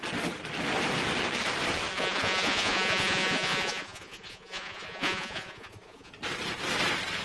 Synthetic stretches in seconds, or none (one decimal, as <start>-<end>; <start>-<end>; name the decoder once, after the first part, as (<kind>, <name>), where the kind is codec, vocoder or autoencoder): 1.9-6.1 (vocoder, Vocos)

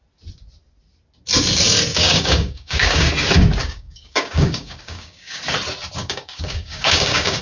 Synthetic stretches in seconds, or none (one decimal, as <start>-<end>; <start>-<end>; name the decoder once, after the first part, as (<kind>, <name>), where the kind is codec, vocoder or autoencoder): 1.9-3.1 (codec, DAC); 3.6-5.4; 6.0-7.4

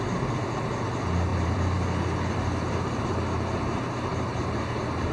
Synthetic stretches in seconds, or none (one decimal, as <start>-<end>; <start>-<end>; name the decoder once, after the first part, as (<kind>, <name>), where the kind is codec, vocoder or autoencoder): 1.3-3.0 (vocoder, BigVGAN v2); 4.1-5.1

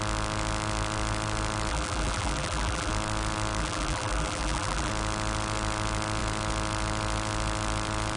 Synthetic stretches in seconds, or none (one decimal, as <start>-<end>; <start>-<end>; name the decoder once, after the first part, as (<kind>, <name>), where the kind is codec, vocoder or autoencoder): 1.7-2.9 (vocoder, BigVGAN v2); 3.6-4.9

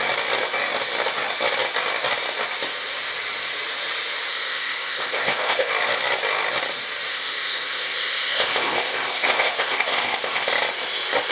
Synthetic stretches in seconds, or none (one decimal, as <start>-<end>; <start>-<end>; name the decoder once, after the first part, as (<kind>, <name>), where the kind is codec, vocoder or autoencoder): 4.3-5.7 (codec, ZipCodec); 7.1-10.5